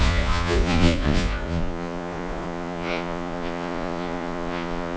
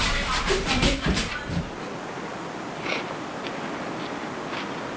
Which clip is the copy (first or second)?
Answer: first